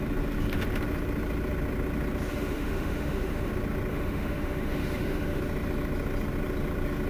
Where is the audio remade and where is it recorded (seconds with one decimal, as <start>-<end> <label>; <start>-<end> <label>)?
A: 0.0-2.3 recorded; 2.3-3.5 remade; 3.5-3.9 recorded; 3.9-5.4 remade; 5.4-7.1 recorded